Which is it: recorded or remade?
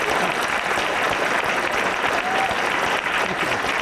recorded